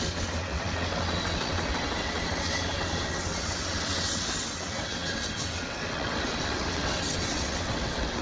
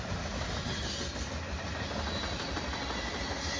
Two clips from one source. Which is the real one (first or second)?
second